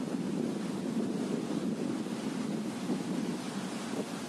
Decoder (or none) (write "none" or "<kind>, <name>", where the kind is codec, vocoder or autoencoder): none